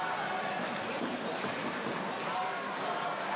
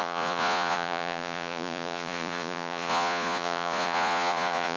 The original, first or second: first